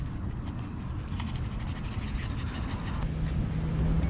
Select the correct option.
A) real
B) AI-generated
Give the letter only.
A